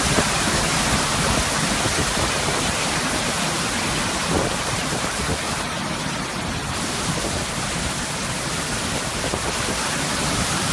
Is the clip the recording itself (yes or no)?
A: yes